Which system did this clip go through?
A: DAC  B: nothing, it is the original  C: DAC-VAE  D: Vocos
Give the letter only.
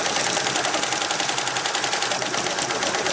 B